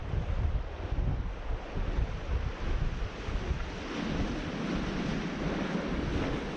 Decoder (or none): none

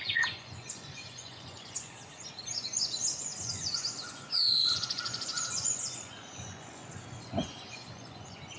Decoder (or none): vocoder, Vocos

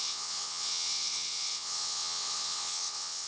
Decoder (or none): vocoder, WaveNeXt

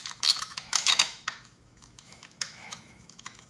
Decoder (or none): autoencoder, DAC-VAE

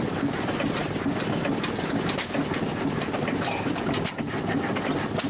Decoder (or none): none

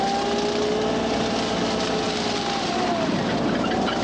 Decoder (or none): none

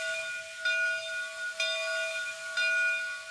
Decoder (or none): none